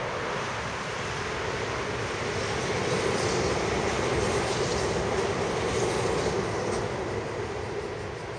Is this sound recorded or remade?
recorded